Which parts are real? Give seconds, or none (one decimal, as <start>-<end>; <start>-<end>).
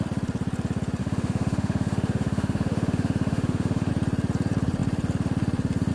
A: 0.0-1.0; 3.9-5.9